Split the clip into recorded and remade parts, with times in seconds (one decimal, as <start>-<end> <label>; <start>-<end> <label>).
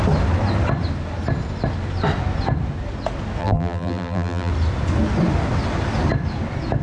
0.0-3.4 recorded; 3.4-4.5 remade; 4.5-6.8 recorded